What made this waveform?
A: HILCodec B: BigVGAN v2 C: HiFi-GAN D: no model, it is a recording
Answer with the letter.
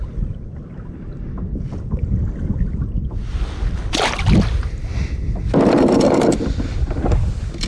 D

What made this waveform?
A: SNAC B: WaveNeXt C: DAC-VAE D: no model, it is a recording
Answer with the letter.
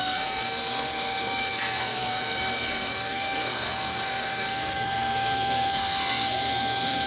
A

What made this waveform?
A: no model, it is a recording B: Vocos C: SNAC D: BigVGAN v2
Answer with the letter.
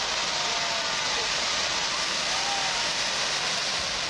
A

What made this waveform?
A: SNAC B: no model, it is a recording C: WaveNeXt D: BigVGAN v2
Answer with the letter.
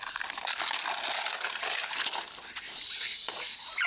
B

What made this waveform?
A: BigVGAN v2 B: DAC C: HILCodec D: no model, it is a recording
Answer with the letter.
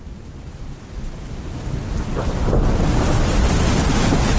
D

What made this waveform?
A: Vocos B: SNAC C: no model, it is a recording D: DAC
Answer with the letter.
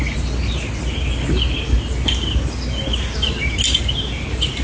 C